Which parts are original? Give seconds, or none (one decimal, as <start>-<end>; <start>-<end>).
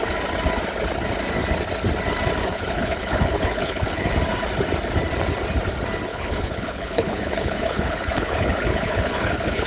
0.0-2.4; 4.1-6.1